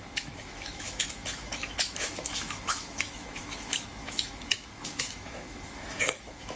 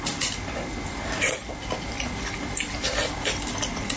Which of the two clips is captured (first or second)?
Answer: second